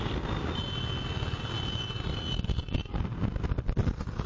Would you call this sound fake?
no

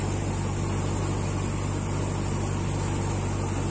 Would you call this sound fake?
no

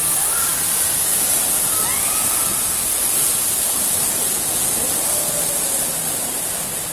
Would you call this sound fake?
no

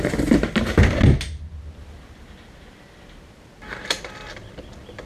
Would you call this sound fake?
no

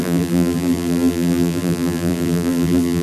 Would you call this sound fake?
yes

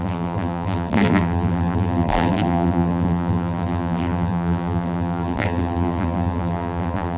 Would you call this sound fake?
yes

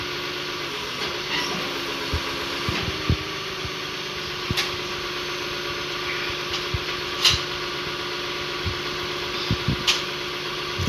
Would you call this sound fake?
no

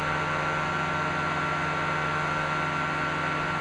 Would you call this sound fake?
no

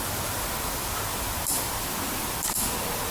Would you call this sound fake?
yes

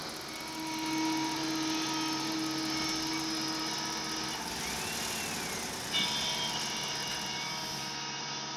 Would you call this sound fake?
no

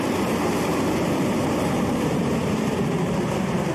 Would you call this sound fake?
yes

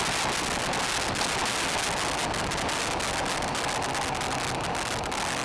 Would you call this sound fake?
no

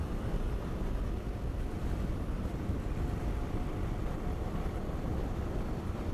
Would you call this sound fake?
yes